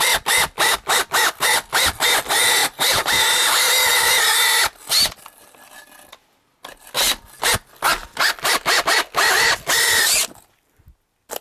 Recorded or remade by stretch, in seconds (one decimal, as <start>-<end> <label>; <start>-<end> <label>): 0.0-2.6 recorded; 2.6-3.5 remade; 3.5-11.4 recorded